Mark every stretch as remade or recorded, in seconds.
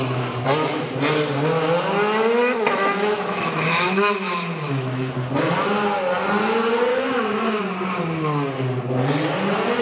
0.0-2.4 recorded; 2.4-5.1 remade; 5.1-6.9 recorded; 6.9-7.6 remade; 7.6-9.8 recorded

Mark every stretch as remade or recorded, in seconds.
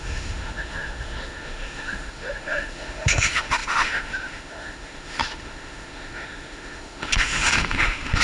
0.0-8.2 remade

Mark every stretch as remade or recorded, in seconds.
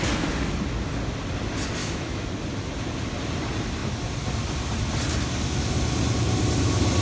0.0-1.8 recorded; 1.8-2.3 remade; 2.3-7.0 recorded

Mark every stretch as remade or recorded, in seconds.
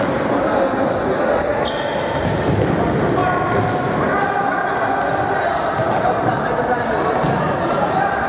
0.0-8.3 recorded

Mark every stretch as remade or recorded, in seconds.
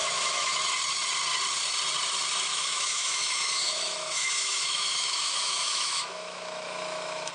0.0-0.6 remade; 0.6-2.5 recorded; 2.5-7.3 remade